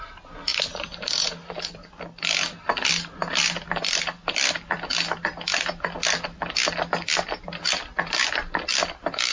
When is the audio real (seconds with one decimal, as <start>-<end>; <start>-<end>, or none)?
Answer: 0.0-9.3